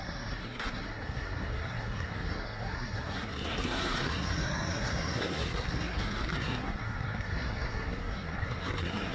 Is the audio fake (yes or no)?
yes